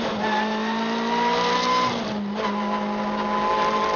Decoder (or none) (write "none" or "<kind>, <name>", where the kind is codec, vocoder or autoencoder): none